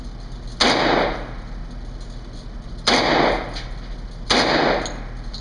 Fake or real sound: real